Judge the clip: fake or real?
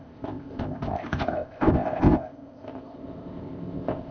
fake